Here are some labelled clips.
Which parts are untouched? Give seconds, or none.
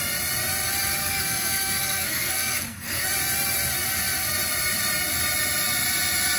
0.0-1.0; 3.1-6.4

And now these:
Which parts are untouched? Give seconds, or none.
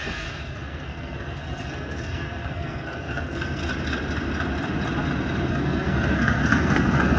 3.6-5.5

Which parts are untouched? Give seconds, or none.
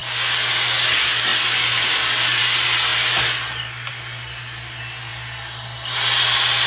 0.0-6.7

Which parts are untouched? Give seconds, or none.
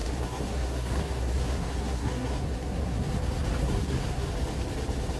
3.1-3.6; 4.3-5.2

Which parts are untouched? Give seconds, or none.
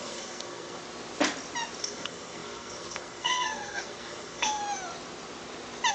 0.8-1.8; 4.6-5.9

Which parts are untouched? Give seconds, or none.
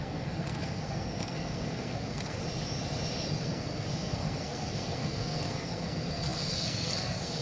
2.4-3.4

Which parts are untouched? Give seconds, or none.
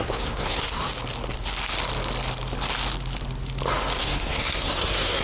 0.9-4.0